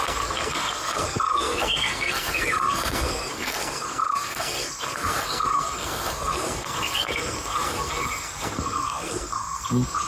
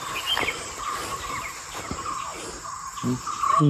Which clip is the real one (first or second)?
second